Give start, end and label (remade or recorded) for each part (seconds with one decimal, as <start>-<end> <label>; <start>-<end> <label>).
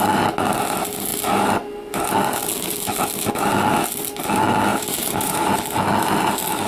0.0-4.7 recorded; 4.7-5.5 remade; 5.5-6.7 recorded